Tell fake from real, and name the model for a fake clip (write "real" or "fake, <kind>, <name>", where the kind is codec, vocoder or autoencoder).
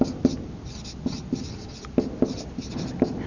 real